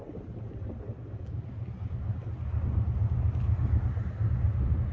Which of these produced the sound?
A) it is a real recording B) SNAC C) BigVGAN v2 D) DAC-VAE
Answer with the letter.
A